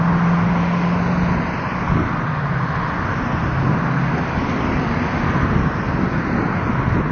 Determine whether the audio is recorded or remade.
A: recorded